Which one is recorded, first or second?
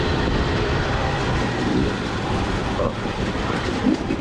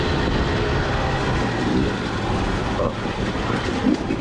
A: second